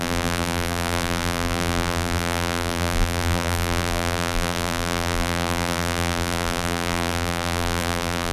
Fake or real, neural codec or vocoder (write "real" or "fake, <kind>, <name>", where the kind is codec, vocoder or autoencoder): fake, vocoder, BigVGAN v2